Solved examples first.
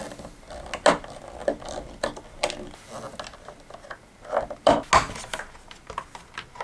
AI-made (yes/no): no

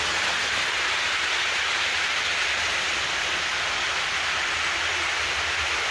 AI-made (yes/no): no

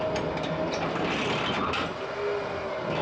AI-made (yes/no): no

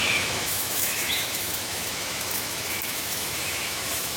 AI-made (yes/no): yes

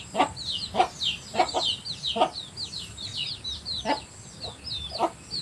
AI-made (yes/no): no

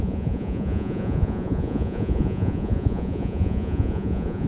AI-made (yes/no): yes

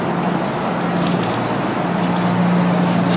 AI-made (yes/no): no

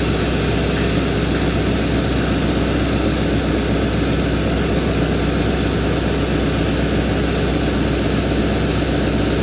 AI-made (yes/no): no